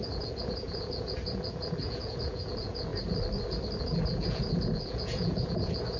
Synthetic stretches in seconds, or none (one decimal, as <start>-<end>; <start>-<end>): 0.0-2.9; 3.8-6.0